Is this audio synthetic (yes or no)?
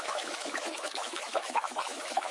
yes